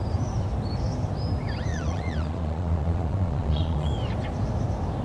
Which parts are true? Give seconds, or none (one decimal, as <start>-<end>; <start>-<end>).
0.0-1.7; 3.9-5.0